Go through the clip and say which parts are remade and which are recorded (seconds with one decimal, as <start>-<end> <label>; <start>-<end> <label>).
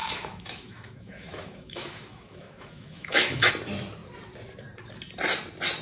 0.0-3.5 remade; 3.5-5.8 recorded